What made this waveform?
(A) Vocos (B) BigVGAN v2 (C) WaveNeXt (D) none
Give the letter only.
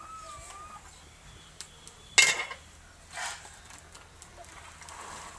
D